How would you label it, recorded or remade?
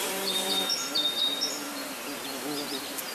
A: remade